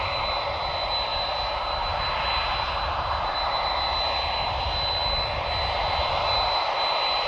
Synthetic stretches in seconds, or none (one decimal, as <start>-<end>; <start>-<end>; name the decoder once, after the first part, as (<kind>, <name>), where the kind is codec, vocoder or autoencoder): none